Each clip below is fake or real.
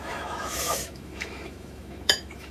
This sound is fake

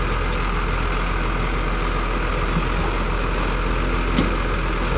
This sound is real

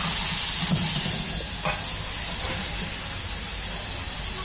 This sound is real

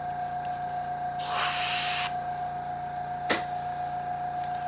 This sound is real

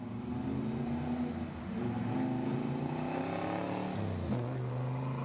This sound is real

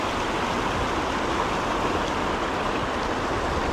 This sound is real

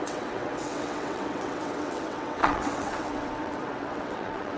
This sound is fake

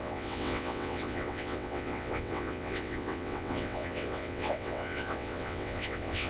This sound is fake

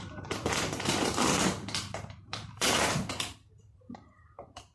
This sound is fake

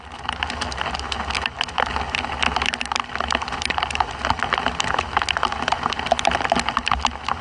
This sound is real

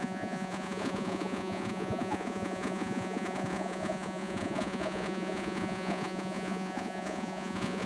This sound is fake